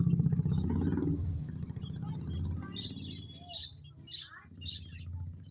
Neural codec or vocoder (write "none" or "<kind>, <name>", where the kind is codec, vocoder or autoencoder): none